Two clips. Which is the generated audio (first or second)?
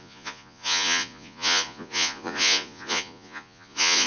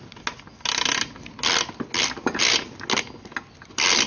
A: first